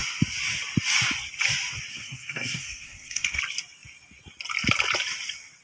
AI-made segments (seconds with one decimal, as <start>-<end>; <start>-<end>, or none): 1.9-3.4